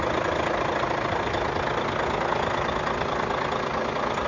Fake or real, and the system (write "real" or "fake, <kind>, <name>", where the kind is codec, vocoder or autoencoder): real